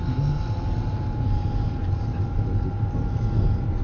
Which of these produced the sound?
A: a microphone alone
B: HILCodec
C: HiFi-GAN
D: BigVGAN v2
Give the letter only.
A